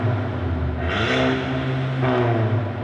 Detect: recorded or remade recorded